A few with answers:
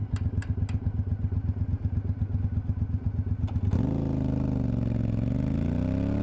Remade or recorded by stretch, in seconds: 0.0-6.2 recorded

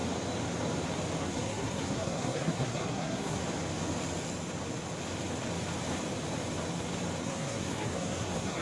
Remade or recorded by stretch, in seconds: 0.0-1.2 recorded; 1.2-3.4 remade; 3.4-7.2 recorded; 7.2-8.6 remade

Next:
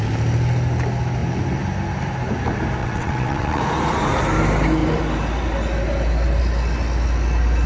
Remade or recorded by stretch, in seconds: 0.0-2.8 recorded; 2.8-3.6 remade; 3.6-7.7 recorded

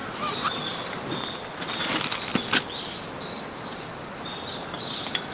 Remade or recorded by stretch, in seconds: 0.0-5.3 recorded

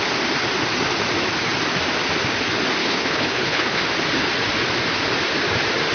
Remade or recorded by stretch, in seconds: 0.0-2.8 recorded; 2.8-3.8 remade; 3.8-5.9 recorded

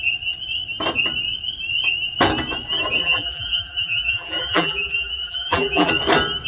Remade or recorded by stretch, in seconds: 0.0-3.0 recorded; 3.0-5.9 remade; 5.9-6.5 recorded